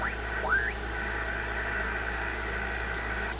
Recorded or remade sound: recorded